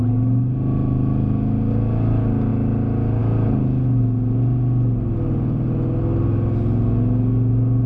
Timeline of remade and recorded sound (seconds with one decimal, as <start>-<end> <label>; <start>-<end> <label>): 0.0-7.9 recorded